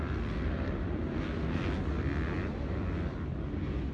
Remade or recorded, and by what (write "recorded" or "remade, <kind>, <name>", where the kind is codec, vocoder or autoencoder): recorded